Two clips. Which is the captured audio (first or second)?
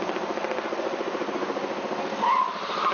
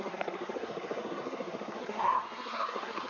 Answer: first